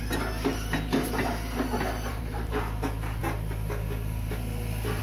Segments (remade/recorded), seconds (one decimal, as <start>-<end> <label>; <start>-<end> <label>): 0.0-2.1 recorded; 2.1-2.6 remade; 2.6-5.0 recorded